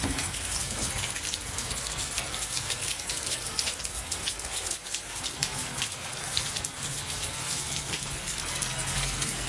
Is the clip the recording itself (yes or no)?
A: no